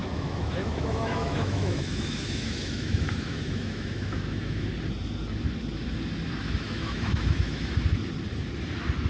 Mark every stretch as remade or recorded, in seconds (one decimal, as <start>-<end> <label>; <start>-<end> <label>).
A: 0.0-4.7 remade; 4.7-6.4 recorded; 6.4-7.7 remade; 7.7-9.1 recorded